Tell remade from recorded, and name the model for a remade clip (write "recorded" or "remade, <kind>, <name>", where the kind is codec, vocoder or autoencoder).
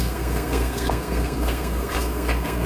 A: remade, codec, SNAC